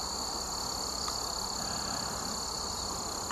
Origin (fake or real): real